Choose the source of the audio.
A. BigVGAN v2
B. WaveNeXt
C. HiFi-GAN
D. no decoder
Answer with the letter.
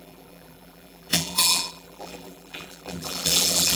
A